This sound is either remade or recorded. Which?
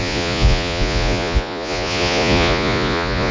remade